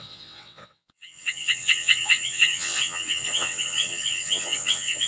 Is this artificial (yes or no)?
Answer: yes